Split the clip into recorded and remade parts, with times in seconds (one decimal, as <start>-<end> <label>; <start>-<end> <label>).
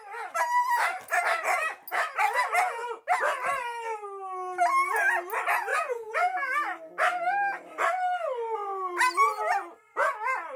0.0-5.7 recorded; 5.7-6.5 remade; 6.5-10.6 recorded